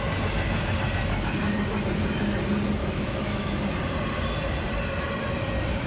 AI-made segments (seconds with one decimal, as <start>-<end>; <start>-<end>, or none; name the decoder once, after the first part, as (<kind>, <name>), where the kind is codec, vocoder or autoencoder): 2.8-3.6 (autoencoder, DAC-VAE)